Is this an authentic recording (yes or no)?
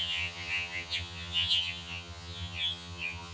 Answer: no